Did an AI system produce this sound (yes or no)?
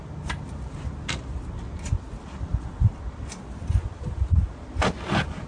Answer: no